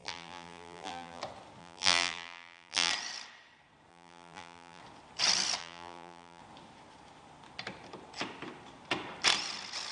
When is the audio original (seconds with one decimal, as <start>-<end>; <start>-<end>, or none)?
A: 1.2-1.6; 2.9-3.9; 4.8-5.6; 6.4-9.9